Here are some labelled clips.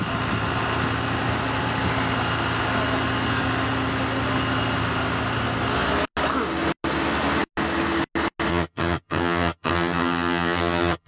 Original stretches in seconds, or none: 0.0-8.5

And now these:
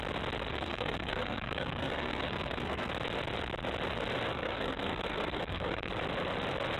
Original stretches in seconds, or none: 0.0-0.5; 2.9-4.3; 5.9-6.8

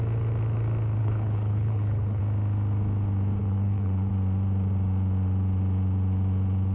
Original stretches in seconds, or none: 0.0-1.0; 2.2-3.4; 4.1-6.7

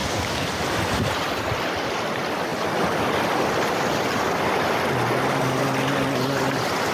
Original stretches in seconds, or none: 0.0-6.9